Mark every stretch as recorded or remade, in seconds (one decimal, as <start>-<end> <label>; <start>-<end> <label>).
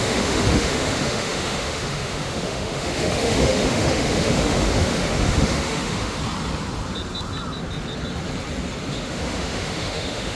0.0-6.2 remade; 6.2-8.9 recorded; 8.9-10.3 remade